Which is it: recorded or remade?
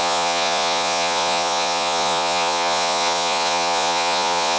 remade